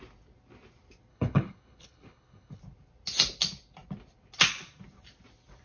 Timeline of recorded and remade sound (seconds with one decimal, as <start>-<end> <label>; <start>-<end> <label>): 0.0-1.1 recorded; 1.1-2.6 remade; 2.6-5.6 recorded